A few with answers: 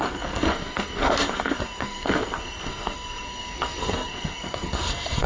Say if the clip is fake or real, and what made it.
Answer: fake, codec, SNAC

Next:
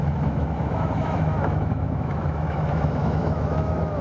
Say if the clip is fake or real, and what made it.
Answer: fake, autoencoder, DAC-VAE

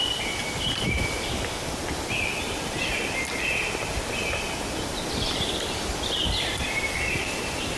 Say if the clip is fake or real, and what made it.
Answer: fake, vocoder, BigVGAN v2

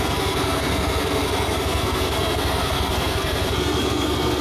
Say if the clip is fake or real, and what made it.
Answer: fake, codec, SNAC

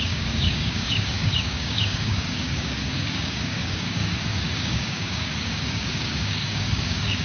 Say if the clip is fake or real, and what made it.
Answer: fake, codec, DAC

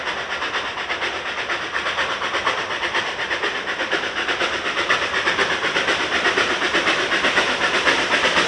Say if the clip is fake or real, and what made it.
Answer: fake, vocoder, BigVGAN v2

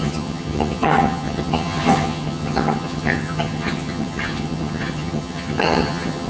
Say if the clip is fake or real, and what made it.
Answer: fake, vocoder, HiFi-GAN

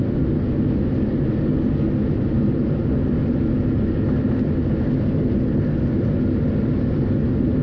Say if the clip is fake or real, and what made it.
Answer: real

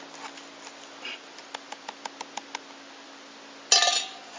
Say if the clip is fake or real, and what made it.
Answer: real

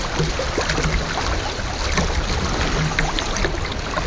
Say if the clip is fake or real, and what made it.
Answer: real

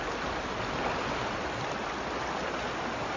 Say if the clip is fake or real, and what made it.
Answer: real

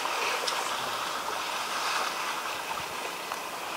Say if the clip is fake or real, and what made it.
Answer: real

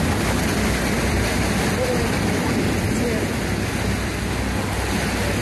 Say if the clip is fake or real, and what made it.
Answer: real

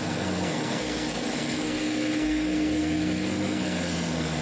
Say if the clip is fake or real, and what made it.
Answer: fake, codec, SNAC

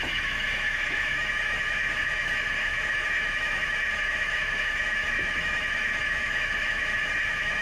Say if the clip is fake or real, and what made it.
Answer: fake, autoencoder, DAC-VAE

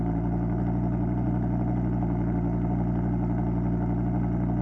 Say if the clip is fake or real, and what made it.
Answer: real